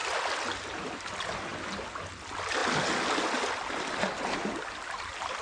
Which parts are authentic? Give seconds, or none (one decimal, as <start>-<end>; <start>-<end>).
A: 0.0-5.4